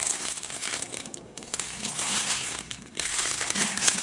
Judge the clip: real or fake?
fake